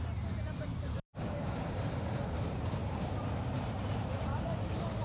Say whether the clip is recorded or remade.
remade